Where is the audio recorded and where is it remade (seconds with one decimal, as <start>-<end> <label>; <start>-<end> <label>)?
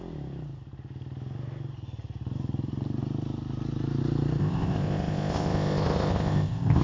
0.0-4.4 recorded; 4.4-6.8 remade